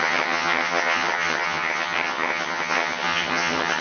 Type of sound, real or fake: fake